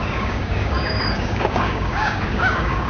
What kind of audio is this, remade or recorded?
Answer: remade